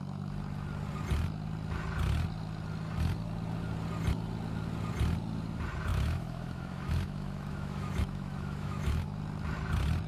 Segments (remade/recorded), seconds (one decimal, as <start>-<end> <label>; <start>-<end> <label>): 0.0-5.9 recorded; 5.9-9.2 remade; 9.2-10.1 recorded